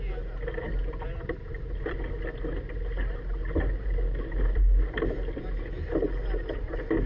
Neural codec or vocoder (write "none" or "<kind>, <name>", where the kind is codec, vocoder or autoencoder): none